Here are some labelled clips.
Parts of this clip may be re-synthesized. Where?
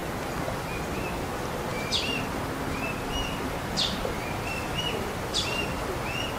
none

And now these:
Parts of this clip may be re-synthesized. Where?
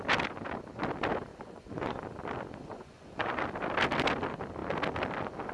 1.3-2.0; 2.6-3.4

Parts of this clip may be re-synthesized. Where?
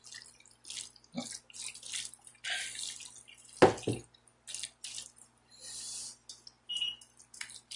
none